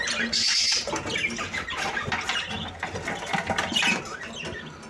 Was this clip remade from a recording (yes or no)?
no